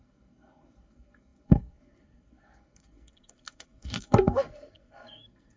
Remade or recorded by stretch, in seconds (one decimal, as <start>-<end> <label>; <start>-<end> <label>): 0.0-5.6 remade

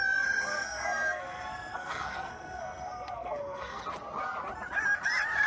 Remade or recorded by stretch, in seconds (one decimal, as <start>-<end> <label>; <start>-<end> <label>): 0.0-0.5 recorded; 0.5-3.8 remade; 3.8-5.5 recorded

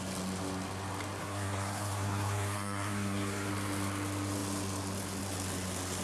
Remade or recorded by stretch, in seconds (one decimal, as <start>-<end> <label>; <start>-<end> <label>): 0.0-1.2 recorded; 1.2-3.5 remade; 3.5-6.0 recorded

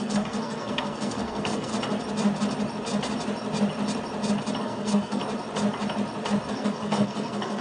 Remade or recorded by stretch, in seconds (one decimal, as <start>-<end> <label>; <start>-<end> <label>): 0.0-1.7 remade; 1.7-4.6 recorded; 4.6-5.2 remade; 5.2-6.5 recorded; 6.5-7.6 remade

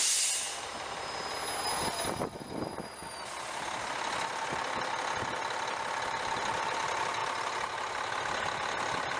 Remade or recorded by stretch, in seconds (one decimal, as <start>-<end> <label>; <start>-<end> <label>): 0.0-9.2 recorded

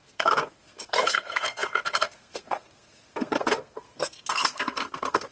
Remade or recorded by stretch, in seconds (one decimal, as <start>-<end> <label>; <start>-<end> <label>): 0.0-5.3 remade

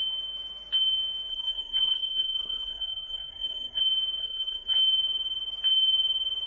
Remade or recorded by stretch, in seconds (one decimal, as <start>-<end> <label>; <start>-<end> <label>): 0.0-1.3 recorded; 1.3-3.8 remade; 3.8-4.2 recorded; 4.2-4.8 remade; 4.8-6.5 recorded

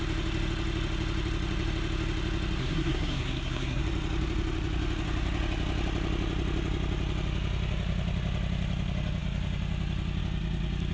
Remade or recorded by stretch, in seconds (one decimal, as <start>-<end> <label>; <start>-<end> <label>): 0.0-2.6 recorded; 2.6-3.8 remade; 3.8-10.9 recorded